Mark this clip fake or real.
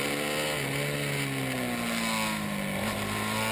real